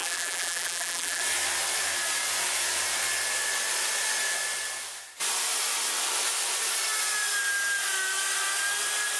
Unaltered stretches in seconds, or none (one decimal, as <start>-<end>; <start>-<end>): 1.2-9.2